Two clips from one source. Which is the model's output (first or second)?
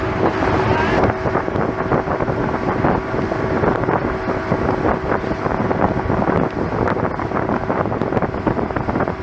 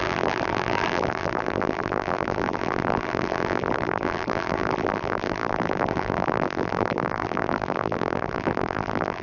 second